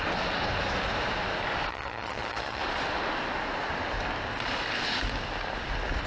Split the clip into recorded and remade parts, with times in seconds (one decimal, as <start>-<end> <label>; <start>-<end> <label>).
0.0-1.7 recorded; 1.7-2.6 remade; 2.6-6.1 recorded